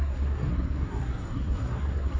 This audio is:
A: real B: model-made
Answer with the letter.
B